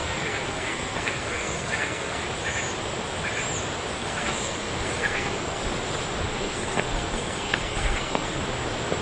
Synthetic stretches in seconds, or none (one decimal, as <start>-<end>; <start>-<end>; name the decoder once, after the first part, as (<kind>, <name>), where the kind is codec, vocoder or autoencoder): 0.0-2.2 (codec, SNAC); 4.0-5.6; 6.3-8.4